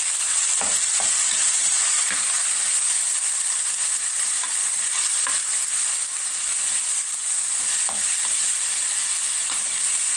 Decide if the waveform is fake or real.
real